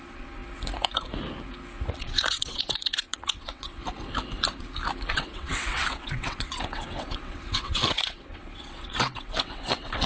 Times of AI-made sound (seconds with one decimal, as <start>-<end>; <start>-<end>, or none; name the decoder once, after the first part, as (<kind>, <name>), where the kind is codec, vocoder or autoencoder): 0.0-0.4 (vocoder, WaveNeXt); 2.0-3.8; 5.1-10.1